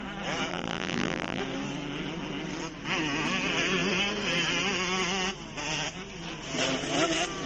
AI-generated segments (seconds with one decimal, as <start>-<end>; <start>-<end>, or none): 0.5-1.4